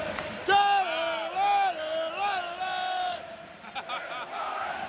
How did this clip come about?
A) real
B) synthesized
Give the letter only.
A